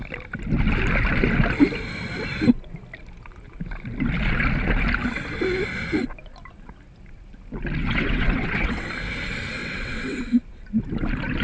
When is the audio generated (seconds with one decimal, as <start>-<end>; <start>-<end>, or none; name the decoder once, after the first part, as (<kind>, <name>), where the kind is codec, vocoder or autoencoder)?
7.8-8.9 (vocoder, WaveNeXt); 9.6-10.2